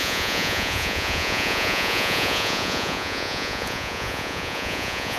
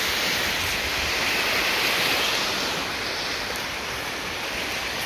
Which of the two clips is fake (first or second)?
first